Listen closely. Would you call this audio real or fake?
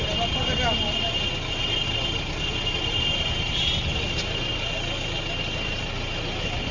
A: real